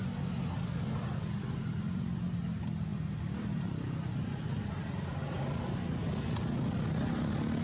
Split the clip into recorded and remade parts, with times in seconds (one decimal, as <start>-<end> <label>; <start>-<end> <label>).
0.0-7.6 recorded